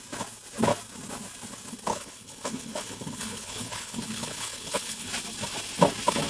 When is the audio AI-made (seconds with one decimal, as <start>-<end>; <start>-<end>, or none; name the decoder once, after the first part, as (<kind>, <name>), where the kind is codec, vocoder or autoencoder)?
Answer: 1.9-5.1 (codec, HILCodec)